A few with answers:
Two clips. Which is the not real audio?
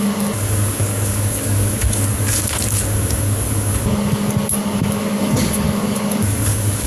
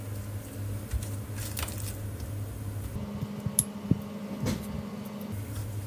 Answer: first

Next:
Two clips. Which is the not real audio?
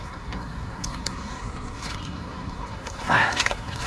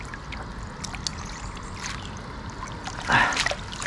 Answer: first